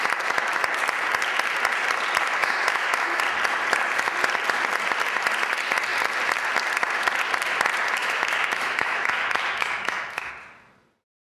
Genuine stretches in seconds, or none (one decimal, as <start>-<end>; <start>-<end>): 0.0-2.4; 3.2-8.0; 10.3-11.3